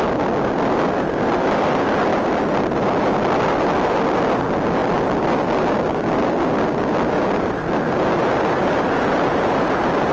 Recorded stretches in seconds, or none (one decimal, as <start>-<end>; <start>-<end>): 0.0-10.1